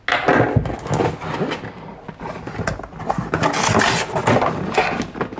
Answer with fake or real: real